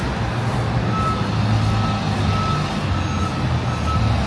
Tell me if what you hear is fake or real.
real